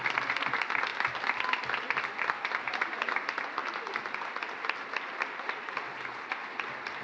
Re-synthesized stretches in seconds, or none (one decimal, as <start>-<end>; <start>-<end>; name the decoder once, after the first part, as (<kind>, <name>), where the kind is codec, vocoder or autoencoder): none